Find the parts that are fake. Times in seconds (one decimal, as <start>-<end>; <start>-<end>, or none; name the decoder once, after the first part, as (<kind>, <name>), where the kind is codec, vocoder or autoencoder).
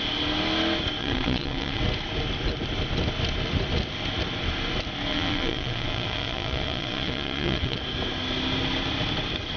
1.0-1.8 (vocoder, WaveNeXt); 5.1-7.8